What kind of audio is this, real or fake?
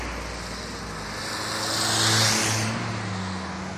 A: real